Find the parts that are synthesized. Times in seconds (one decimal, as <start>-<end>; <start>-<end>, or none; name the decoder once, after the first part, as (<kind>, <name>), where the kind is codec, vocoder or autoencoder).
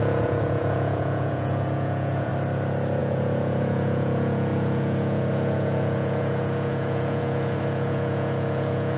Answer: 0.0-2.3 (vocoder, Vocos); 3.0-9.0